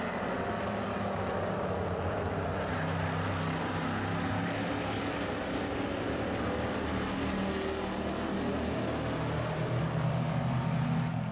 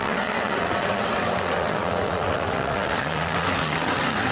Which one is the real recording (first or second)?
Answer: first